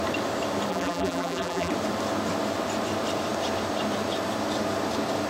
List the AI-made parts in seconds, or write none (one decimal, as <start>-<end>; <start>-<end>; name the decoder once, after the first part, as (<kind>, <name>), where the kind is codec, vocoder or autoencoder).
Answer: 0.7-1.7 (vocoder, BigVGAN v2)